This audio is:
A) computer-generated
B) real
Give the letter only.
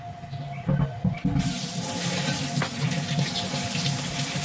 B